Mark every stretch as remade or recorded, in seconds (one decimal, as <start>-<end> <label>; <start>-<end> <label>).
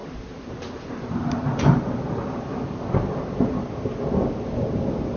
0.0-5.2 recorded